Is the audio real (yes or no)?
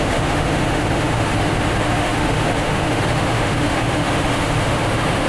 no